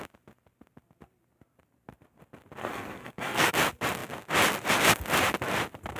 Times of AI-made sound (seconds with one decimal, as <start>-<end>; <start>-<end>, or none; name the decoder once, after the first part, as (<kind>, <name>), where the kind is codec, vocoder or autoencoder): 2.6-3.5 (codec, SNAC)